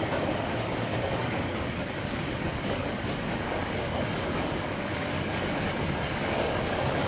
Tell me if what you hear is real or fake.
fake